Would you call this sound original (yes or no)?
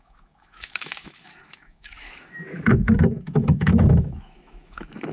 no